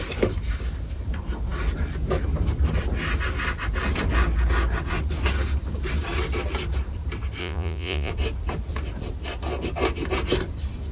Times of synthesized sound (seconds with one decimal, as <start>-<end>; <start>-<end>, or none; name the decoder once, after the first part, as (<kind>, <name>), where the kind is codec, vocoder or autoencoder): 7.4-8.1 (vocoder, Vocos)